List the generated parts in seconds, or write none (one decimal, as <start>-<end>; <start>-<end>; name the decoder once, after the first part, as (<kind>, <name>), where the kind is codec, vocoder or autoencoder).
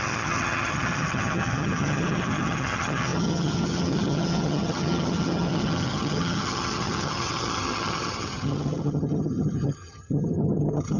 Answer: 0.0-11.0 (vocoder, HiFi-GAN)